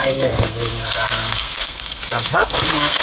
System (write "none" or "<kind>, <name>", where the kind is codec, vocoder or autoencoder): codec, SNAC